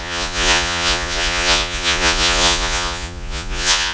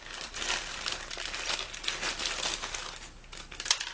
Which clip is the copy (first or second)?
first